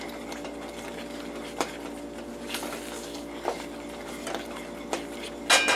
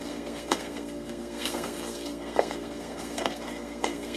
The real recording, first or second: first